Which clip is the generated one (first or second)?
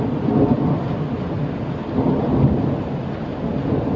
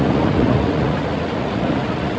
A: second